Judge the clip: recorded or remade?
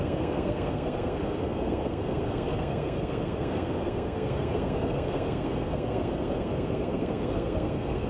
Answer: remade